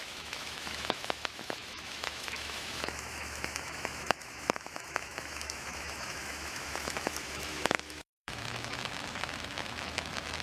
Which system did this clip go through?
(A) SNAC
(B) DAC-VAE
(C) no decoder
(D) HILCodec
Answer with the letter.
B